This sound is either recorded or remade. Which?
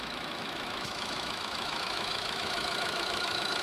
remade